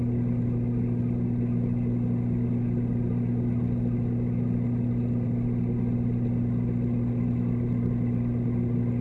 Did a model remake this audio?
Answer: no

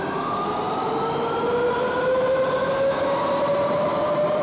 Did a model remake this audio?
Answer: no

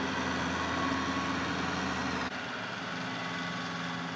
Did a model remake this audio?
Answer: no